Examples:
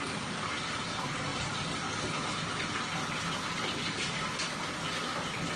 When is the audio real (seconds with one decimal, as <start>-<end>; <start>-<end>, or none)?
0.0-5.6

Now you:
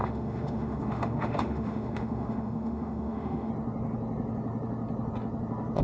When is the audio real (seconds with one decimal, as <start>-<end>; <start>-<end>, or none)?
3.5-5.8

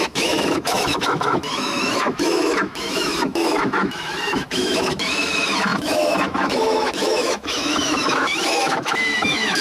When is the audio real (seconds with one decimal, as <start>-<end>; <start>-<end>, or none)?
none

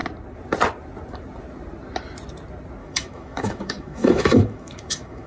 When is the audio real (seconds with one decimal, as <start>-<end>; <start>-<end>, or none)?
0.0-2.8

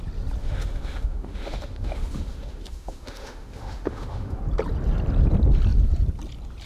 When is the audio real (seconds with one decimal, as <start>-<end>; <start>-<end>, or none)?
0.0-0.4; 4.4-6.7